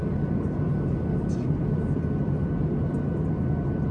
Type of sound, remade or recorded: recorded